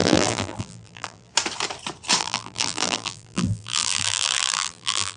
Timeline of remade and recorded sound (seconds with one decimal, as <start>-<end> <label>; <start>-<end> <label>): 0.0-1.3 remade; 1.3-2.2 recorded; 2.2-5.2 remade